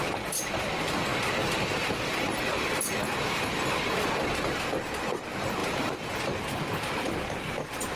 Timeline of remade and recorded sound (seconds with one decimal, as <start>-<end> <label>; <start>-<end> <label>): 0.0-5.6 recorded; 5.6-6.2 remade; 6.2-8.0 recorded